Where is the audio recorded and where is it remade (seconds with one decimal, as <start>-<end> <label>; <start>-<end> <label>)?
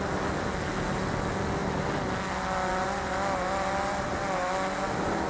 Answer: 0.0-5.3 recorded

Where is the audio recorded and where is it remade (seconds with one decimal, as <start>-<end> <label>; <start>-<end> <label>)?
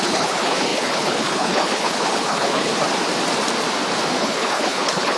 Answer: 0.0-2.7 remade; 2.7-4.2 recorded; 4.2-5.2 remade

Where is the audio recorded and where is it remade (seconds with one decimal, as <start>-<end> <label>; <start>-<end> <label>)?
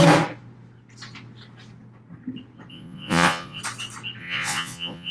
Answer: 0.0-2.7 recorded; 2.7-3.6 remade; 3.6-4.2 recorded; 4.2-5.1 remade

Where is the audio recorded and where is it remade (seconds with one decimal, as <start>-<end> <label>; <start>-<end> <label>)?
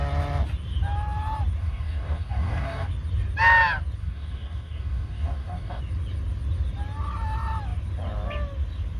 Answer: 0.0-1.6 recorded; 1.6-2.9 remade; 2.9-4.0 recorded; 4.0-5.8 remade; 5.8-9.0 recorded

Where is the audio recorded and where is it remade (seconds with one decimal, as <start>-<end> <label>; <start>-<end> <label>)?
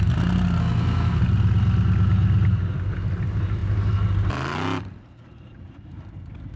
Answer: 0.0-0.6 recorded; 0.6-1.2 remade; 1.2-6.6 recorded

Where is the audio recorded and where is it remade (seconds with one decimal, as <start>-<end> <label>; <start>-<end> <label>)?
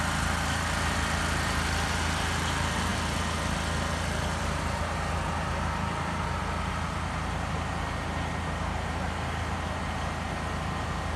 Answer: 0.0-11.2 recorded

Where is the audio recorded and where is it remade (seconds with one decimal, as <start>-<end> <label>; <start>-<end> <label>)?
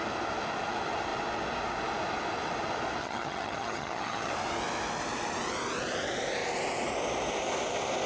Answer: 0.0-3.0 recorded; 3.0-4.3 remade; 4.3-8.1 recorded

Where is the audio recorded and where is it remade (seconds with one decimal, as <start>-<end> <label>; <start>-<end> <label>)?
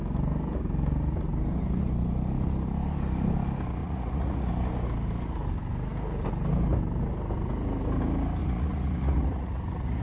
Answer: 0.0-3.8 recorded; 3.8-4.5 remade; 4.5-8.4 recorded; 8.4-10.0 remade